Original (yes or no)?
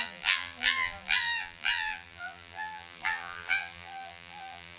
no